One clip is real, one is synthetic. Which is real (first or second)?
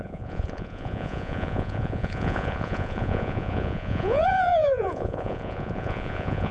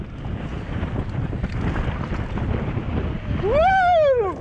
second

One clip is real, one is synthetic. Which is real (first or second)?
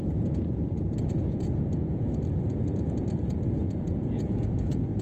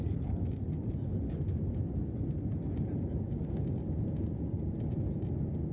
second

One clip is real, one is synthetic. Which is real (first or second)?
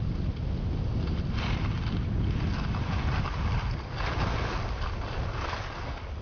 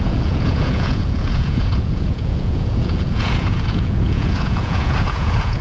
first